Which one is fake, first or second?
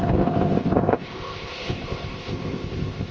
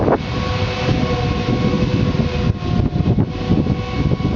first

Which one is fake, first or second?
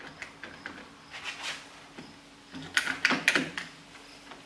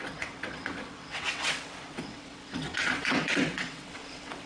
second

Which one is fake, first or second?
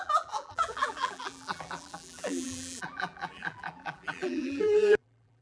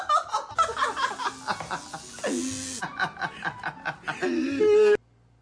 first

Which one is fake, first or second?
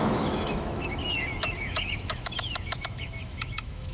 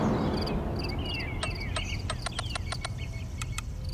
first